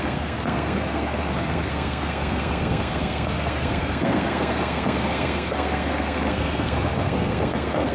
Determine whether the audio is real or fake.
fake